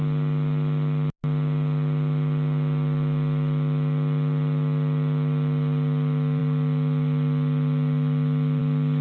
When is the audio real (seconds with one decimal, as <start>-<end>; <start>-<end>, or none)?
0.0-9.0